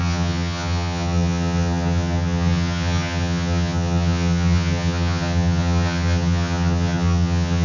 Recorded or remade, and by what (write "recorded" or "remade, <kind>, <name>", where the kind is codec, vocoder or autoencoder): remade, vocoder, HiFi-GAN